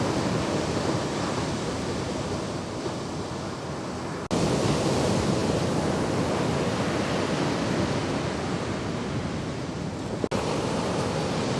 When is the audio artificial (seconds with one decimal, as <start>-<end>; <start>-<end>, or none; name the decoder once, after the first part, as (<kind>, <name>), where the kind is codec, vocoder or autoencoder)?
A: none